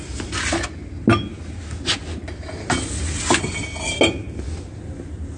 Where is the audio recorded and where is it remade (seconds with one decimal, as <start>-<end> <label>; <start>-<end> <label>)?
0.0-5.4 recorded